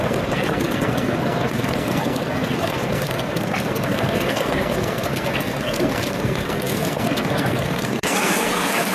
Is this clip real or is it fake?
fake